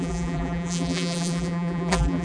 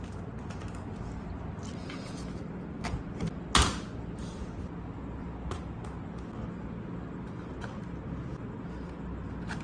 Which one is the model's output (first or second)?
first